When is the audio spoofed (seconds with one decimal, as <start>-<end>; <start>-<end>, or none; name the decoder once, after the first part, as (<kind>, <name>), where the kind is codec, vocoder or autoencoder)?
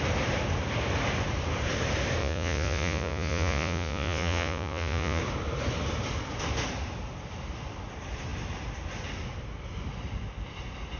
2.2-5.2 (vocoder, Vocos)